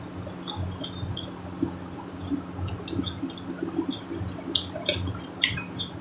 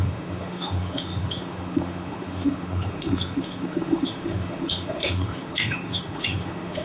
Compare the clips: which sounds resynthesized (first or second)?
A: second